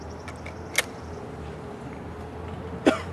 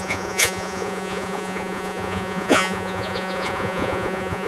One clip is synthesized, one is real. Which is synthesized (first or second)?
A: second